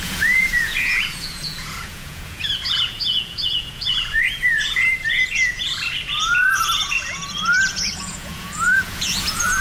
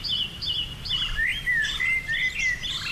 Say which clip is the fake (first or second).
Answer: first